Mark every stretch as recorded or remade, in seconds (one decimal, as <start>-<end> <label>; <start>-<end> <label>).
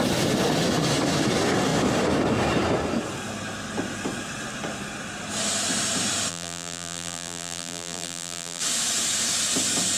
0.0-6.3 recorded; 6.3-8.6 remade; 8.6-10.0 recorded